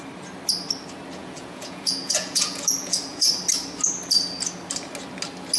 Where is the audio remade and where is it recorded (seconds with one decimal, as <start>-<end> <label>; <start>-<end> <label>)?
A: 0.0-1.2 recorded; 1.2-3.3 remade; 3.3-5.6 recorded